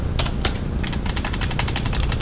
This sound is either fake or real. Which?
real